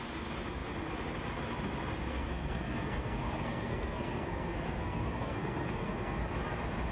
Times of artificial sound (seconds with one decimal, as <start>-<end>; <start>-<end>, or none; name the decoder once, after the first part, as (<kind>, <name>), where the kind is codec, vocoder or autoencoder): 2.1-6.2 (codec, SNAC)